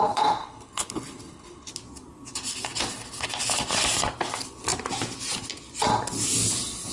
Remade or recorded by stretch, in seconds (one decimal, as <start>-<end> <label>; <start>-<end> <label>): 0.0-0.4 recorded; 0.4-1.7 remade; 1.7-6.9 recorded